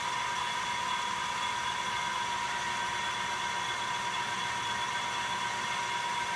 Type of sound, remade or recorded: recorded